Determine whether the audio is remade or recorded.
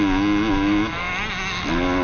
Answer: recorded